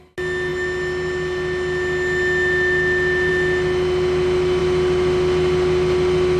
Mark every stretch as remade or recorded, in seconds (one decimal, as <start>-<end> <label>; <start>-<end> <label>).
0.0-6.4 recorded